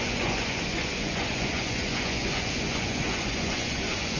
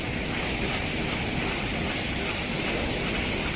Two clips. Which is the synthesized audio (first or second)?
first